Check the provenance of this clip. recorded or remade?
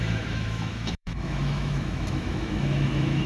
remade